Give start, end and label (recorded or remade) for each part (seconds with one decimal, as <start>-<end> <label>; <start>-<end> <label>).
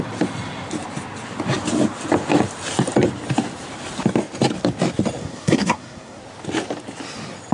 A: 0.0-5.2 recorded; 5.2-6.2 remade; 6.2-7.5 recorded